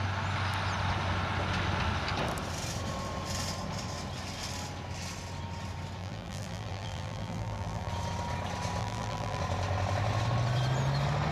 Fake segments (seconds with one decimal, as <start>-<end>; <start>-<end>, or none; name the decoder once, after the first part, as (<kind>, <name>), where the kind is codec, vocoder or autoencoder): 6.0-7.9 (vocoder, BigVGAN v2); 8.8-9.4